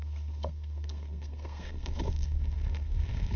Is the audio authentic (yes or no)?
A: no